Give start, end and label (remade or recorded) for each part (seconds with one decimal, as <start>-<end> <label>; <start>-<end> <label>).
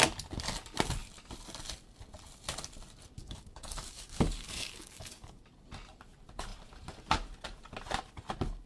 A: 0.0-3.2 recorded; 3.2-5.4 remade; 5.4-8.7 recorded